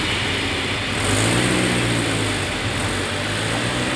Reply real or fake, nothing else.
real